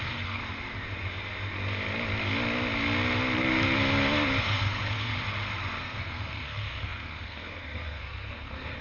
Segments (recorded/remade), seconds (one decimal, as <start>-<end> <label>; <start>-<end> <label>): 0.0-0.4 remade; 0.4-4.4 recorded; 4.4-5.1 remade; 5.1-5.8 recorded; 5.8-8.8 remade